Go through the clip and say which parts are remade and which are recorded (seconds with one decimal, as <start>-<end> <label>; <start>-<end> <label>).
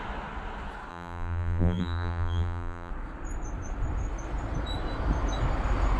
0.0-0.9 recorded; 0.9-2.9 remade; 2.9-6.0 recorded